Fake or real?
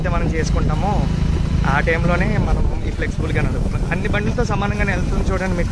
real